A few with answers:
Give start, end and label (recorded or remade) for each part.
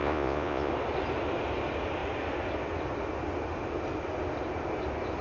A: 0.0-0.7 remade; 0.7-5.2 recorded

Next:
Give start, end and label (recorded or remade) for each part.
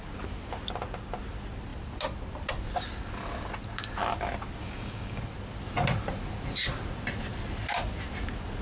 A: 0.0-4.6 recorded; 4.6-5.2 remade; 5.2-8.6 recorded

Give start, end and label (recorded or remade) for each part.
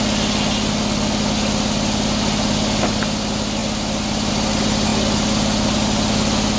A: 0.0-6.6 recorded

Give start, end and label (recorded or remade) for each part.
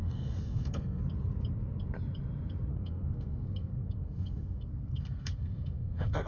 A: 0.0-1.0 remade; 1.0-2.7 recorded; 2.7-6.3 remade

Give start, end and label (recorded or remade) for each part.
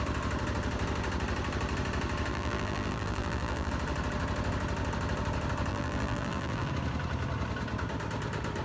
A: 0.0-2.3 recorded; 2.3-3.7 remade; 3.7-5.7 recorded; 5.7-6.7 remade; 6.7-8.6 recorded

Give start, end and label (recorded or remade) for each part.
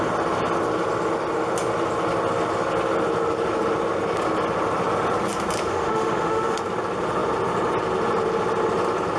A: 0.0-5.7 recorded; 5.7-6.6 remade; 6.6-9.2 recorded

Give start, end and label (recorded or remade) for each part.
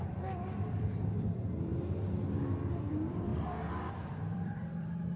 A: 0.0-1.7 remade; 1.7-2.7 recorded; 2.7-3.3 remade; 3.3-3.9 recorded; 3.9-5.2 remade